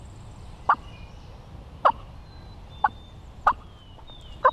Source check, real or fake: real